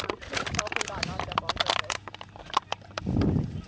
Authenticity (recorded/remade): recorded